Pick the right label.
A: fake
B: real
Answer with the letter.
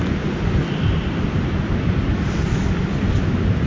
B